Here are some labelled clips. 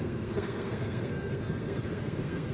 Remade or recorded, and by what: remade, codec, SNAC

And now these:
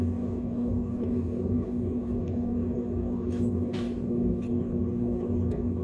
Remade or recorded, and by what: remade, codec, DAC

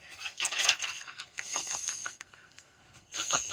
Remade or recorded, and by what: remade, codec, SNAC